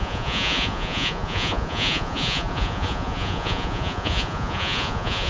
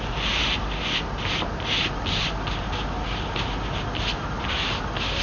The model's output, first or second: first